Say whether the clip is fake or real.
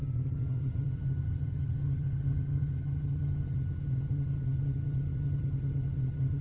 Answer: fake